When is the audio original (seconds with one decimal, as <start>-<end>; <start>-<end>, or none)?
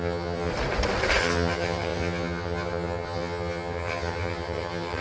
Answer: 0.5-1.2